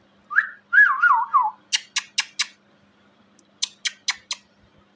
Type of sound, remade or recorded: recorded